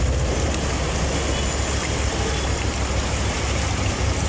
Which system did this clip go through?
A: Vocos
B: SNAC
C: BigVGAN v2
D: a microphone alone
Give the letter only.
D